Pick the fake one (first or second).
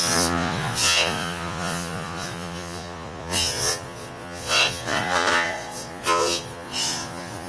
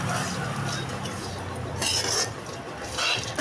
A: first